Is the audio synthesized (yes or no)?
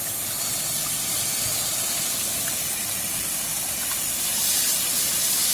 no